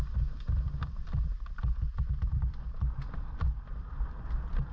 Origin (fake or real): real